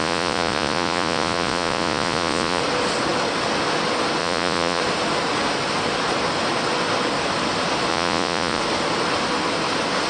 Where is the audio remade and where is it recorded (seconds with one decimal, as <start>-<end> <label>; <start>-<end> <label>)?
0.0-2.6 remade; 2.6-4.2 recorded; 4.2-4.8 remade; 4.8-7.9 recorded; 7.9-8.6 remade; 8.6-10.1 recorded